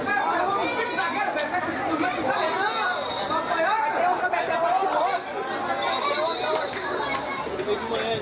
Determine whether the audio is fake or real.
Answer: real